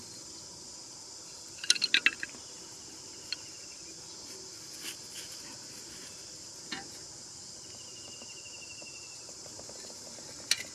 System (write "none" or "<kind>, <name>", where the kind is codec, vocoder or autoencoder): none